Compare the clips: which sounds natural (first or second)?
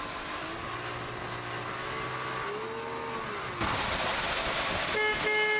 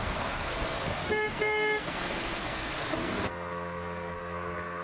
first